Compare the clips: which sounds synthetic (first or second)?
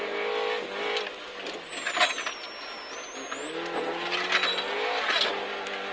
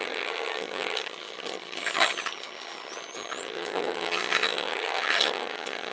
second